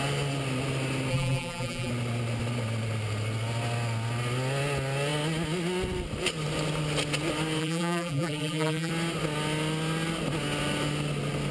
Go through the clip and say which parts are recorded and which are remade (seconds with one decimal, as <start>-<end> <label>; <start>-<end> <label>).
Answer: 0.0-1.1 recorded; 1.1-1.9 remade; 1.9-7.6 recorded; 7.6-8.9 remade; 8.9-11.5 recorded